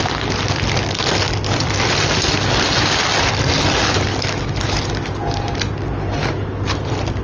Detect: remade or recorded recorded